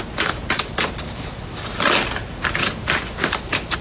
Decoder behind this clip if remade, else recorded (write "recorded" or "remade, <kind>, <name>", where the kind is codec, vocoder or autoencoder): recorded